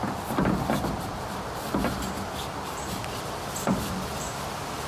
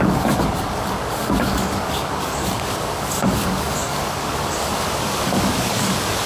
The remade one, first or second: second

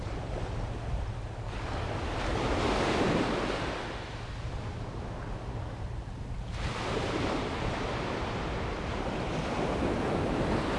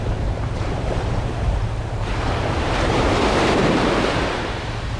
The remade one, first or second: second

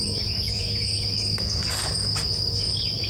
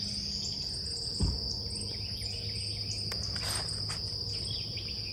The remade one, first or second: first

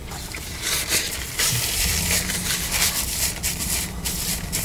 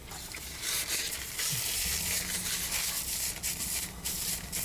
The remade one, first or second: first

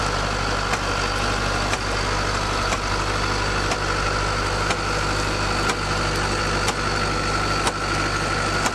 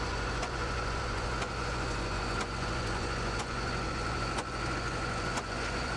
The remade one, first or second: second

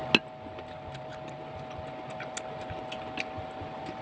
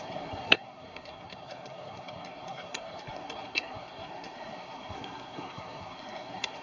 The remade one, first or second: second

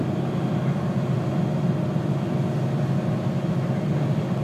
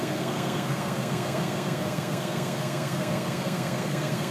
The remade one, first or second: second